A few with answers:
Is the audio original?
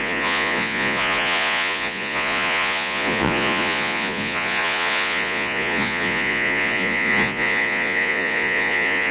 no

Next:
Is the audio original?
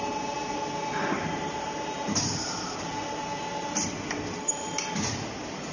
yes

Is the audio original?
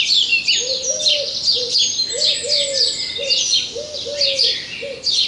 yes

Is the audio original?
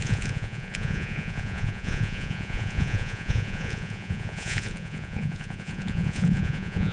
no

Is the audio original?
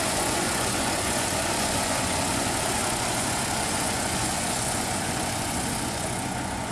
no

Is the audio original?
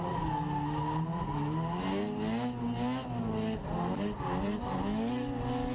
yes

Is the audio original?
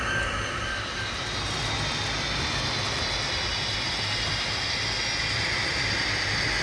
yes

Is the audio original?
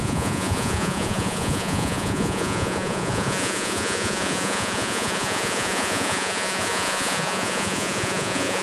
no